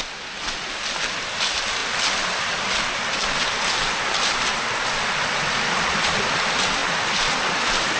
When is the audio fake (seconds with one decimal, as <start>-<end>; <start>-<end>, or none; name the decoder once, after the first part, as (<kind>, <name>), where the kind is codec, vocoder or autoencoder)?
none